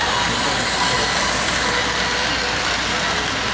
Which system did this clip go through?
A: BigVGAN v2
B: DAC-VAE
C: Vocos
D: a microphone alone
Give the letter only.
D